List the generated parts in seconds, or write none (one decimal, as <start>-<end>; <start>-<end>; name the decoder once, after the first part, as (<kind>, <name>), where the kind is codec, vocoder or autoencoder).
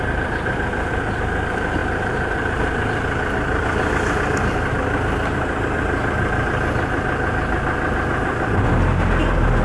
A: none